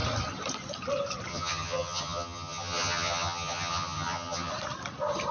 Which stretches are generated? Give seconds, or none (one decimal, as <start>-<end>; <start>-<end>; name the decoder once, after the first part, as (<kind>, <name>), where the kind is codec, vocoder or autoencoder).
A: 1.3-4.5 (vocoder, HiFi-GAN)

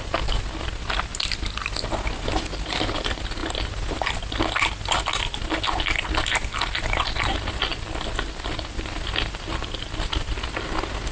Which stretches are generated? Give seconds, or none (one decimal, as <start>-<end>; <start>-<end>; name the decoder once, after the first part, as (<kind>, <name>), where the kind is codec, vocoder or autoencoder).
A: none

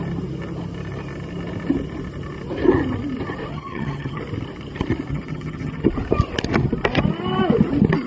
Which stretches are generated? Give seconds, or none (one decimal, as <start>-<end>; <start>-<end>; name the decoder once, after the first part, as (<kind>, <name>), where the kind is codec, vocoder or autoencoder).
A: 3.5-4.2 (vocoder, HiFi-GAN); 5.1-5.9

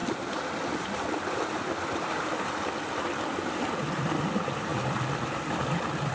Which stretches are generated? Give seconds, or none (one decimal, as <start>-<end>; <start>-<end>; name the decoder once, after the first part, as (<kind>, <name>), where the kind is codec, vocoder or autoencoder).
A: none

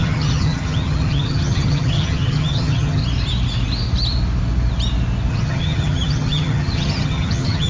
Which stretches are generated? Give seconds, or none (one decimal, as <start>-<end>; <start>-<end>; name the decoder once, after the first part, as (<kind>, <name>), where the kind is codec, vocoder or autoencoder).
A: 0.0-3.0 (vocoder, HiFi-GAN); 5.3-7.7

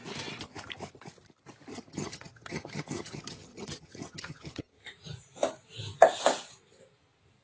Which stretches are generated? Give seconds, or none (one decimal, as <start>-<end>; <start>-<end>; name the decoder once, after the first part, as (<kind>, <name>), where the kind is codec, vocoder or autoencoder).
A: 1.7-4.9 (vocoder, HiFi-GAN)